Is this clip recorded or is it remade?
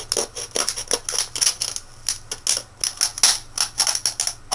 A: recorded